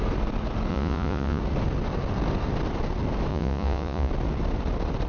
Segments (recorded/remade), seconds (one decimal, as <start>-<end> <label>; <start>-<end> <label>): 0.0-0.7 recorded; 0.7-1.4 remade; 1.4-3.3 recorded; 3.3-4.1 remade; 4.1-5.1 recorded